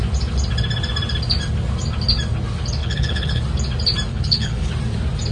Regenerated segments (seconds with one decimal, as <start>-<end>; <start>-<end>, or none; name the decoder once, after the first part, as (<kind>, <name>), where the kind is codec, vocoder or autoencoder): 2.8-3.4 (codec, HILCodec); 4.1-4.7